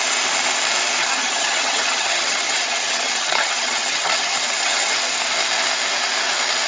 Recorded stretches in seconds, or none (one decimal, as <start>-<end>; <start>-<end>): 0.0-1.0; 5.0-6.7